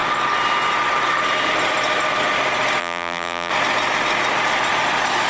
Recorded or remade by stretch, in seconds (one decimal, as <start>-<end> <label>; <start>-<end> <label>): 0.0-2.8 recorded; 2.8-3.5 remade; 3.5-5.3 recorded